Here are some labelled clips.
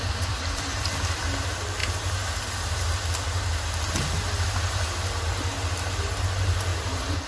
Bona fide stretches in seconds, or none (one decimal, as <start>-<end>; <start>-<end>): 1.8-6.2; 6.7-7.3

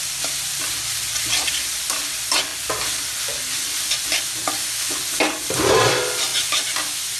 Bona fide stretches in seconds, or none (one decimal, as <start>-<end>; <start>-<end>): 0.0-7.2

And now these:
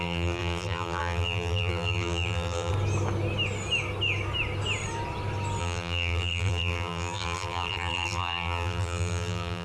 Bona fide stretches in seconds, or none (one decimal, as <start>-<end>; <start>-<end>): 2.7-5.6

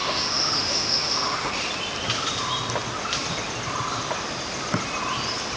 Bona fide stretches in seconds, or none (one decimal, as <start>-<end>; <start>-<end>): 1.5-5.6

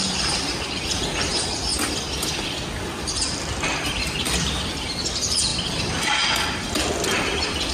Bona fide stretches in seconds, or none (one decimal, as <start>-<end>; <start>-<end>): 1.7-3.2; 5.5-6.6